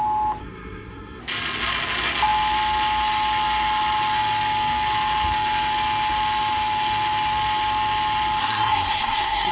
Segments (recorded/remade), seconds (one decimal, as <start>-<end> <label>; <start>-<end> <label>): 0.0-0.4 recorded; 0.4-1.2 remade; 1.2-8.4 recorded; 8.4-9.5 remade